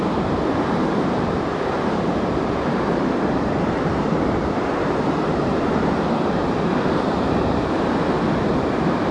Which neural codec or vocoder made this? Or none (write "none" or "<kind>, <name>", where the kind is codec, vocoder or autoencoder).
vocoder, BigVGAN v2